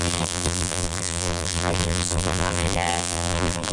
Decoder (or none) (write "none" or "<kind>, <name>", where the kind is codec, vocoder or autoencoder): vocoder, BigVGAN v2